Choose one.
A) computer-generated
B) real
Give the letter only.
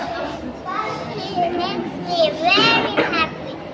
B